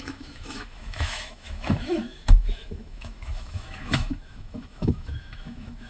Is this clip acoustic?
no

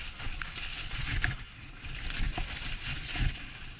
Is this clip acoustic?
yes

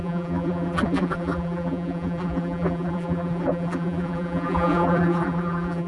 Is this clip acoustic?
no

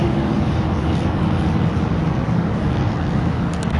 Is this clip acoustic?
no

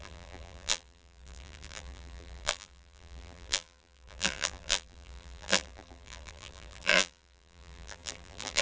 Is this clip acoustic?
no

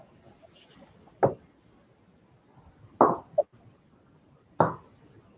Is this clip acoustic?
yes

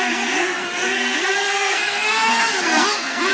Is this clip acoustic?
no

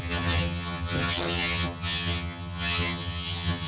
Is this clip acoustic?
no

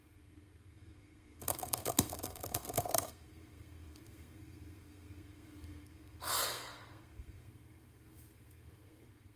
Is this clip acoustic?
no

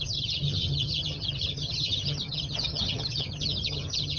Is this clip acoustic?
no